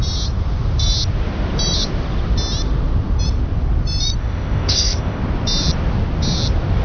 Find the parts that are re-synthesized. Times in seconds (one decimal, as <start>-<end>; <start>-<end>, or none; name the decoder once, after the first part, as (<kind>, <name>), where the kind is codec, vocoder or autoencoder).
4.2-5.2 (codec, ZipCodec)